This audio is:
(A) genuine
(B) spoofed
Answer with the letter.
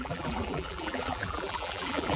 B